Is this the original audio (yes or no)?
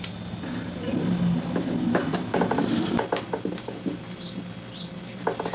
yes